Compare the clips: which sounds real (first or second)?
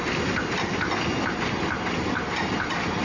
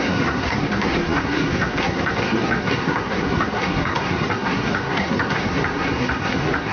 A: first